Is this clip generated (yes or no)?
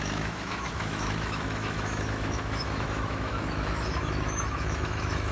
yes